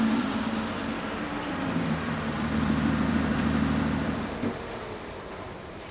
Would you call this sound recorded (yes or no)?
no